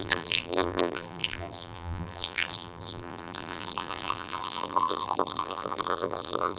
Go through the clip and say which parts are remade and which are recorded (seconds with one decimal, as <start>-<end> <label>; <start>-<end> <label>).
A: 0.0-6.6 remade

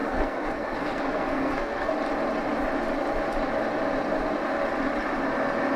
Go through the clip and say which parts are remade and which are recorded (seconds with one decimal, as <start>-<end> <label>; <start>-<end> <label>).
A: 0.0-1.9 remade; 1.9-5.8 recorded

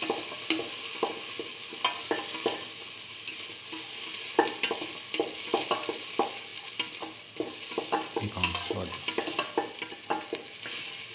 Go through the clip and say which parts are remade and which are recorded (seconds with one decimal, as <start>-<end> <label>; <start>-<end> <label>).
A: 0.0-11.1 recorded

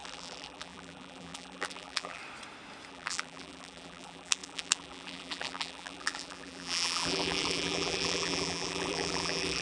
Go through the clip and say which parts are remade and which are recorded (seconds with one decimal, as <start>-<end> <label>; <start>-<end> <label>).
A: 0.0-2.2 remade; 2.2-2.9 recorded; 2.9-9.6 remade